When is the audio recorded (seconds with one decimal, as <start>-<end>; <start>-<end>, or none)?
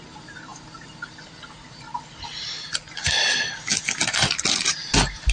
0.0-5.3